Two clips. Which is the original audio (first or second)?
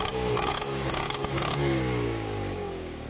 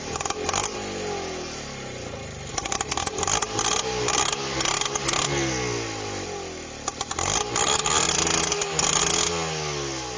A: second